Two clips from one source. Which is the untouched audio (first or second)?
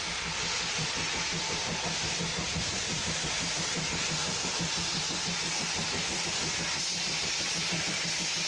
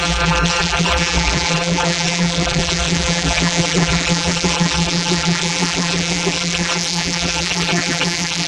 first